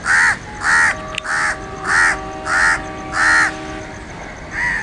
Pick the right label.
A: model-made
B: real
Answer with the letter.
B